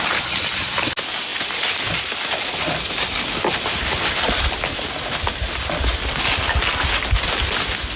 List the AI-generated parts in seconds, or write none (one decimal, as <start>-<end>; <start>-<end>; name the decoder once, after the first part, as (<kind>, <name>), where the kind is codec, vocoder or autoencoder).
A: none